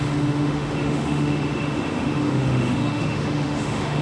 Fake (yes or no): yes